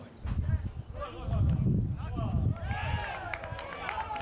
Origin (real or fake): real